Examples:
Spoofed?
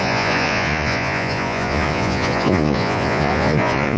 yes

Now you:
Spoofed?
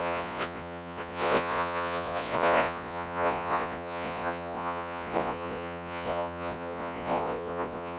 yes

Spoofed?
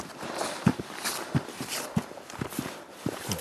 no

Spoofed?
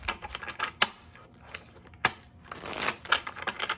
no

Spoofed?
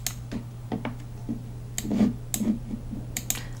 no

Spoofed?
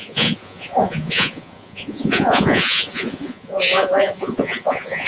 yes